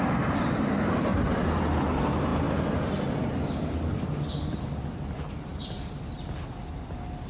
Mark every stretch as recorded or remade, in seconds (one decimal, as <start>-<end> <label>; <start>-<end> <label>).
0.0-7.3 recorded

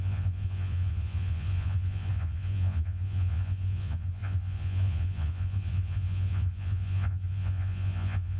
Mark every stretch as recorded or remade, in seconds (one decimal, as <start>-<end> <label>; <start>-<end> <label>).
0.0-8.4 remade